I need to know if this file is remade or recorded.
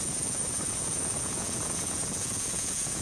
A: remade